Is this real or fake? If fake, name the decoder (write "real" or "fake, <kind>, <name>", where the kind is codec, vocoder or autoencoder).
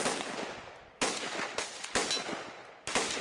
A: real